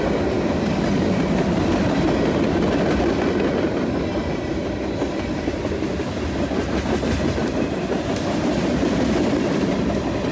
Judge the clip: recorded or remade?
recorded